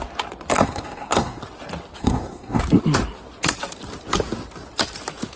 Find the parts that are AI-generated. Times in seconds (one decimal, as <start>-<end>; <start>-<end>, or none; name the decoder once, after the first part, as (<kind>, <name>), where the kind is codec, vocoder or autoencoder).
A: 0.5-1.4 (codec, SNAC); 2.0-2.6